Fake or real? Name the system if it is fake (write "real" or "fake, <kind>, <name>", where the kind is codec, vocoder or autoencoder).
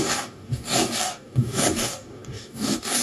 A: fake, codec, DAC